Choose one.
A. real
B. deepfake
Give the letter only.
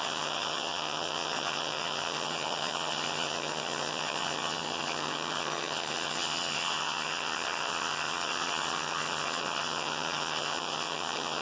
B